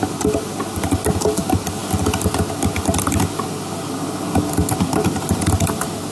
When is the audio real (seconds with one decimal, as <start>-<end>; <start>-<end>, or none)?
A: 0.0-6.1